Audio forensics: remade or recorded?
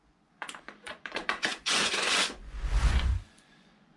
remade